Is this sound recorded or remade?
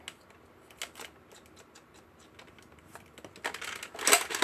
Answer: recorded